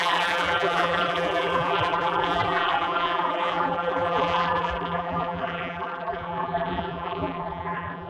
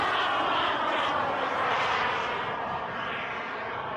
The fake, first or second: first